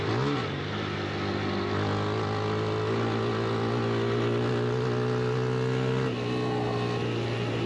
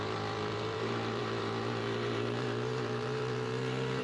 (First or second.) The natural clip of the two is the first